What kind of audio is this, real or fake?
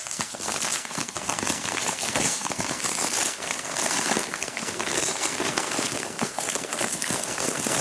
fake